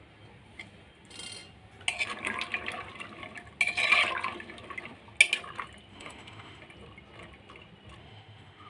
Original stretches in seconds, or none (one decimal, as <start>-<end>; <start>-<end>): 0.0-5.9; 6.6-8.0